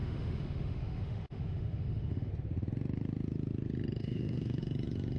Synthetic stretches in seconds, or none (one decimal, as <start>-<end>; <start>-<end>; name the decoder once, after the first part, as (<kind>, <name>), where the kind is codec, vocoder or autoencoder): 0.0-2.3 (autoencoder, DAC-VAE); 4.0-4.6